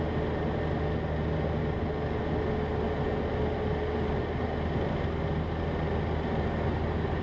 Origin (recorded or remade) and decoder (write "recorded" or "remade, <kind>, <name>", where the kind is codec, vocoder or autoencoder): recorded